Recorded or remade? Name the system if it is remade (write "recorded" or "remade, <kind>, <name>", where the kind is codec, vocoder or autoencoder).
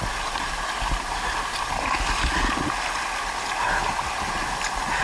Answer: recorded